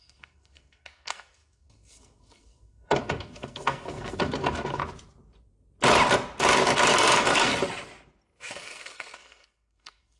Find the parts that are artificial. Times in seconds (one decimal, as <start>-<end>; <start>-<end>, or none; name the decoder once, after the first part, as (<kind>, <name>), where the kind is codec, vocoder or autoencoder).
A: 0.0-4.8 (codec, SNAC); 6.9-7.5; 8.4-10.2